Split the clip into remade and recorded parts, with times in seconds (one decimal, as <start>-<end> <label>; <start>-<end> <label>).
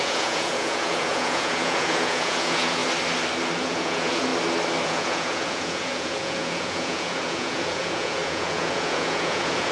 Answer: 0.0-2.8 remade; 2.8-3.6 recorded; 3.6-4.3 remade; 4.3-4.8 recorded; 4.8-9.7 remade